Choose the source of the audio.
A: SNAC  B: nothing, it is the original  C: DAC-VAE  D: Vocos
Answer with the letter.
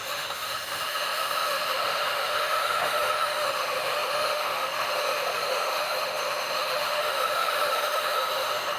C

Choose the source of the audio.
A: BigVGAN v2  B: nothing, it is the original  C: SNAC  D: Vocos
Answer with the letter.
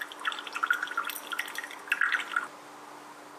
B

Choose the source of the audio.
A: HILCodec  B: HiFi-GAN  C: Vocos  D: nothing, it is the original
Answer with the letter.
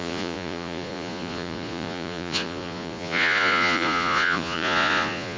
C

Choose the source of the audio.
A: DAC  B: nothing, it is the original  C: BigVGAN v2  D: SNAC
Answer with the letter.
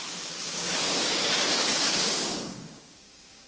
A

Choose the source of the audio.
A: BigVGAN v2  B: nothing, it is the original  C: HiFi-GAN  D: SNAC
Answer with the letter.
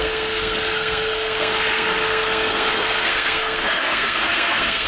D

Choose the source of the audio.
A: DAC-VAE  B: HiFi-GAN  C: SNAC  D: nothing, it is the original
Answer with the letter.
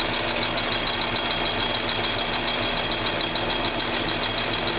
D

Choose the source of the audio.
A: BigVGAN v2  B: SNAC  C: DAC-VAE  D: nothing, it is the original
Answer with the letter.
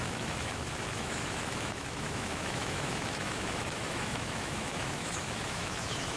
C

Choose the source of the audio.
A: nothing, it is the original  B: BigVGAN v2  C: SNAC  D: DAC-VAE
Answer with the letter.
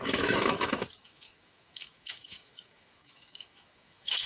D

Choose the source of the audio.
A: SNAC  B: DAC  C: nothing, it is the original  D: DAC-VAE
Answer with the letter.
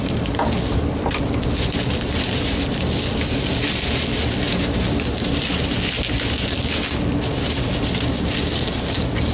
C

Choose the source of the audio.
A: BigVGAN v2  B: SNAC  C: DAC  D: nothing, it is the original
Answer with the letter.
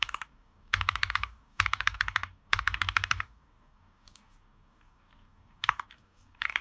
C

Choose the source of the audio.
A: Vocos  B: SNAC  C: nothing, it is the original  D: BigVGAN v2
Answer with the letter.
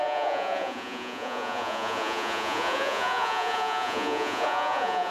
A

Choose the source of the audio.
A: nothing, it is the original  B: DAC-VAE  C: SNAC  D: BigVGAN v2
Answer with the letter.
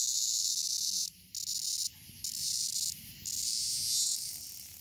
A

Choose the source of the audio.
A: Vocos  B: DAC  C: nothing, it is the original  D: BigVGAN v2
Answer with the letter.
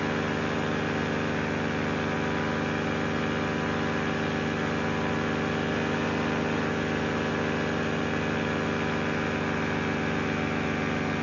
C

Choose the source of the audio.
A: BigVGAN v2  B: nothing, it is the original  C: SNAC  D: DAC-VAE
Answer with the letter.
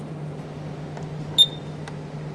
B